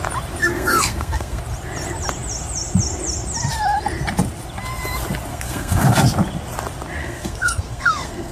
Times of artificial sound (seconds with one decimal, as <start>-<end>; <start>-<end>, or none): 0.4-1.4; 5.3-6.0; 7.0-8.3